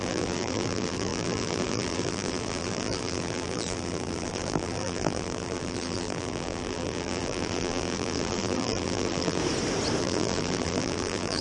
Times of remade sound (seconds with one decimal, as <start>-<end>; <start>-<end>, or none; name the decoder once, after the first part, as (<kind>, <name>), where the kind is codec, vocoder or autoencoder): 0.0-9.4 (vocoder, BigVGAN v2); 10.0-11.4